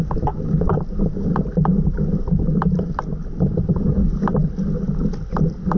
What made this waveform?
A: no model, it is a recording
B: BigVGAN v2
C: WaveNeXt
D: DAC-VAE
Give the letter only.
A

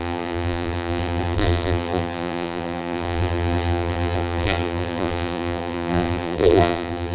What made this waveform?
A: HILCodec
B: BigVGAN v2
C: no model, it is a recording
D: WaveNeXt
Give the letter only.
B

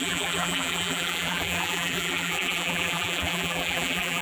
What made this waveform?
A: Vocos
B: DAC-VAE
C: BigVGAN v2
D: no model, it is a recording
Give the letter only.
C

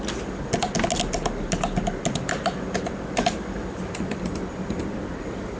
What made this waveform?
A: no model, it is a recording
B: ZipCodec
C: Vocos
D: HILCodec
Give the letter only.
A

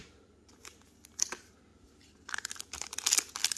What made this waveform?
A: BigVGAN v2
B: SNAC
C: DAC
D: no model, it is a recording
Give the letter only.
D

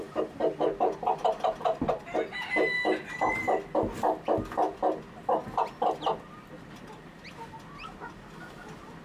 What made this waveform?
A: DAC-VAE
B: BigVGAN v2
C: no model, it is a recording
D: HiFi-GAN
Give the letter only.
C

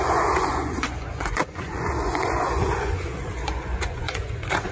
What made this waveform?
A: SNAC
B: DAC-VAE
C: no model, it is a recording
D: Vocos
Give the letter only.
D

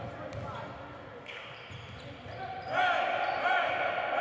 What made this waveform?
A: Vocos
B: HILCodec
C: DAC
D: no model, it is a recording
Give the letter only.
D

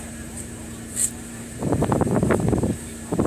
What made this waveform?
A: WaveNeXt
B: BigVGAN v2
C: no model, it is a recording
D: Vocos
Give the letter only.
B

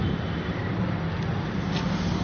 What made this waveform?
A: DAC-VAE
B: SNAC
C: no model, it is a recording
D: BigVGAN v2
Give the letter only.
C